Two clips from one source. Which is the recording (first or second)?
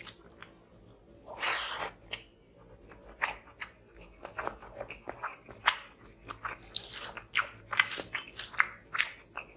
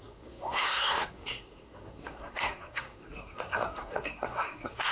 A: first